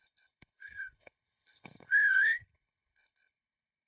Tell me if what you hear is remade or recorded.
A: remade